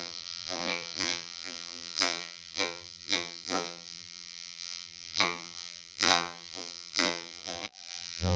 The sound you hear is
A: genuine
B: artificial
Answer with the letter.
B